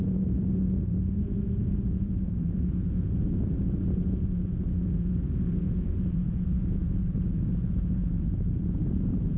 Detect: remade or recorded remade